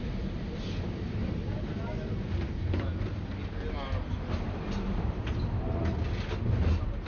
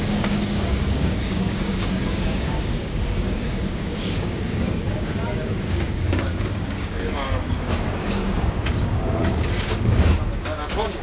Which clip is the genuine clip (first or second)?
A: first